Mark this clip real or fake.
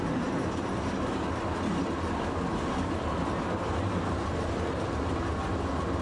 real